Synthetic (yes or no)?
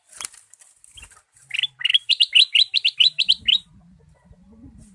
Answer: yes